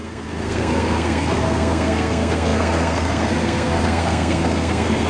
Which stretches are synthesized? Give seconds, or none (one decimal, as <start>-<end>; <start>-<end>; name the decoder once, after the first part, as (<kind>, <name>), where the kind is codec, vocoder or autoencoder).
0.0-5.1 (codec, SNAC)